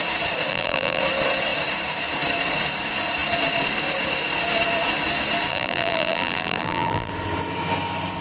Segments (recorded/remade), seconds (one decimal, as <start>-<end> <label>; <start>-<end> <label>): 0.0-0.5 recorded; 0.5-1.0 remade; 1.0-5.5 recorded; 5.5-7.1 remade; 7.1-8.2 recorded